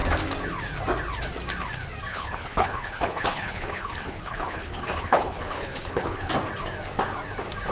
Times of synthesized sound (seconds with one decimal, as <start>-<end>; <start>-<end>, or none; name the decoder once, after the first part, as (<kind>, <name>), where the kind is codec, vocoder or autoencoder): 2.1-6.3 (codec, HILCodec)